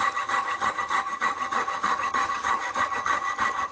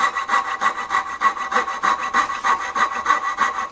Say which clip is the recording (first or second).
second